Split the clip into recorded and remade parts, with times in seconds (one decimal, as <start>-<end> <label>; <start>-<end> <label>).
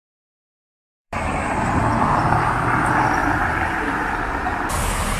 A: 0.0-1.8 remade; 1.8-3.2 recorded; 3.2-3.9 remade; 3.9-5.2 recorded